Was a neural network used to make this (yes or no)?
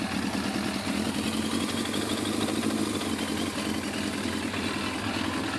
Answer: no